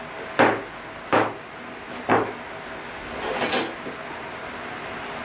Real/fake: real